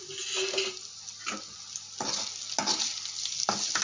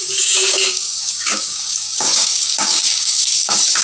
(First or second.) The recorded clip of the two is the first